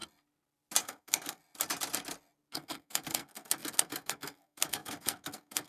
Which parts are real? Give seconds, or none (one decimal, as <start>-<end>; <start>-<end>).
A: 0.0-0.8; 1.4-2.5